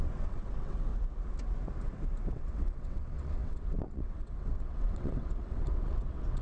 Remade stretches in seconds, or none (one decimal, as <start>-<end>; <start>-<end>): 0.0-0.9; 2.3-6.4